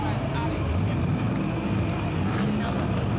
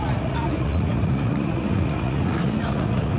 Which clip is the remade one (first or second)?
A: second